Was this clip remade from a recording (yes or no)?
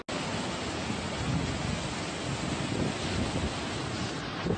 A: no